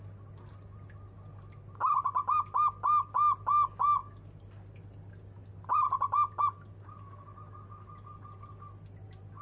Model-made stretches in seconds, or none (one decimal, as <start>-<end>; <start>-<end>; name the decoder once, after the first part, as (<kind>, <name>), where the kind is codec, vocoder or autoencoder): none